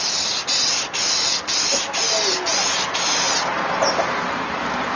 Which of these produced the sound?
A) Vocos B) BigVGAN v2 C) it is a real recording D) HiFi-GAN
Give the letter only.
C